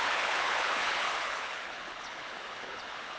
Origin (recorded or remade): remade